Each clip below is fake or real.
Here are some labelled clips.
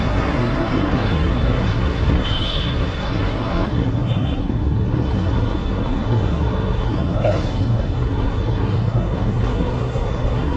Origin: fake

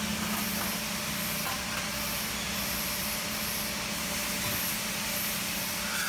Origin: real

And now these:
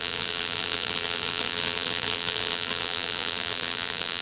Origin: fake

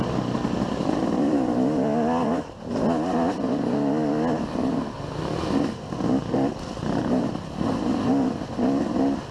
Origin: real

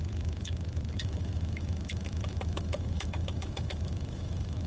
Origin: fake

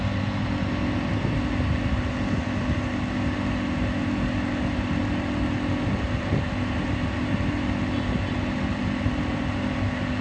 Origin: real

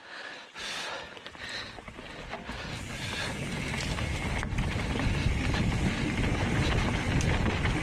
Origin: real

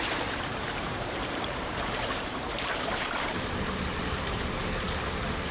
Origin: fake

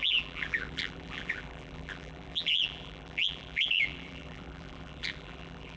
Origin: fake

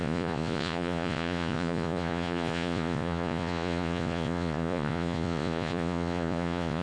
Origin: fake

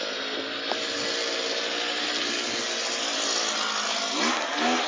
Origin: real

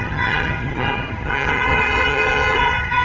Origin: fake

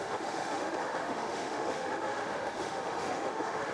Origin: fake